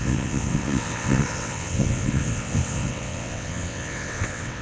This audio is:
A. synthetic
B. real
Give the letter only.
A